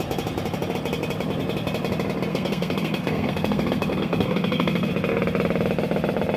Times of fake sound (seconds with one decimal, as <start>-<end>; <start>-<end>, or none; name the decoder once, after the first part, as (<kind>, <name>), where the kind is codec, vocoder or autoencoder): 2.3-4.9 (codec, SNAC)

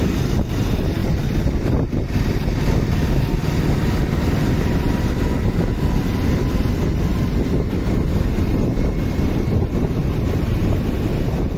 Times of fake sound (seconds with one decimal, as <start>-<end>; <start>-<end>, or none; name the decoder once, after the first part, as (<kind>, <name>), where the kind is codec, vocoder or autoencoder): none